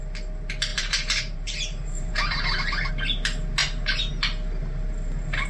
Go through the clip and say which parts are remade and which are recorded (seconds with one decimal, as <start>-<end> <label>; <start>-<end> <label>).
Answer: 0.0-0.7 recorded; 0.7-2.9 remade; 2.9-3.6 recorded; 3.6-4.1 remade; 4.1-4.6 recorded; 4.6-5.5 remade